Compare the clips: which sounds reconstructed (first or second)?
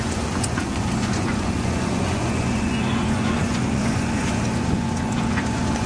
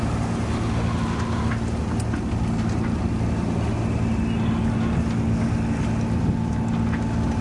first